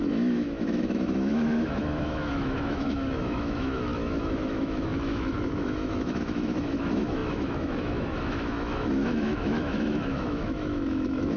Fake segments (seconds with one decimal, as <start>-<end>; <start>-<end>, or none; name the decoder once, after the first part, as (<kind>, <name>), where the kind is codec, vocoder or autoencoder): 0.0-11.4 (autoencoder, DAC-VAE)